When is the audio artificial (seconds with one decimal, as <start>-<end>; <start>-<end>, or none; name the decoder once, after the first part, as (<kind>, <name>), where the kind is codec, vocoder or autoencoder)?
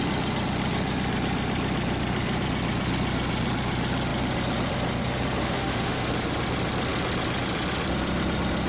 5.4-6.1 (autoencoder, DAC-VAE)